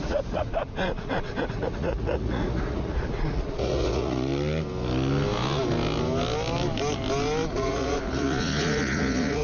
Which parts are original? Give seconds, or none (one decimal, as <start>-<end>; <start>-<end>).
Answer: 4.3-7.5